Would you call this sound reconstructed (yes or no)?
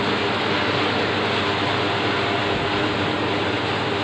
no